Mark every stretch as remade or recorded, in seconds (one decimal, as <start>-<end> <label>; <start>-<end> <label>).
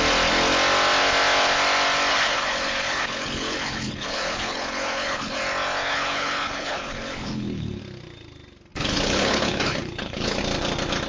0.0-2.1 recorded; 2.1-5.4 remade; 5.4-5.9 recorded; 5.9-7.8 remade; 7.8-8.7 recorded; 8.7-10.4 remade; 10.4-11.1 recorded